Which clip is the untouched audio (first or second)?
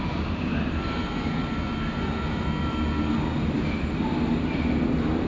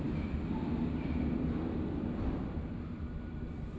first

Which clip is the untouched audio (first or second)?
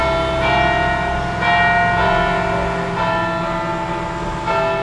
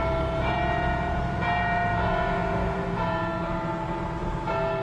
first